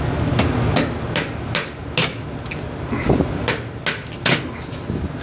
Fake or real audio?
real